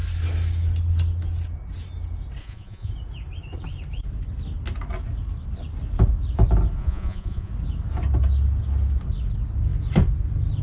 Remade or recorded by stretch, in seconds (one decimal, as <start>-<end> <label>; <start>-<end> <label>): 0.0-2.4 recorded; 2.4-2.9 remade; 2.9-6.8 recorded; 6.8-7.5 remade; 7.5-10.6 recorded